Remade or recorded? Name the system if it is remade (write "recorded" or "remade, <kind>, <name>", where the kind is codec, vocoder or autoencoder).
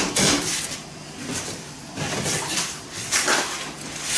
remade, vocoder, BigVGAN v2